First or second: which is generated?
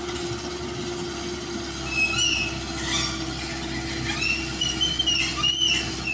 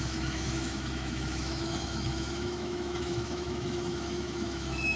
second